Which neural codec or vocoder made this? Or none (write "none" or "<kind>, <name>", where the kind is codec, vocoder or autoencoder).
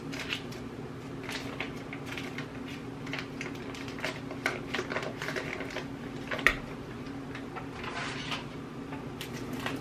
none